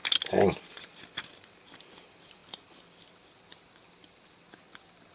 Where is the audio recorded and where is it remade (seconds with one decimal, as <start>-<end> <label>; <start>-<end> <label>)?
0.0-5.1 recorded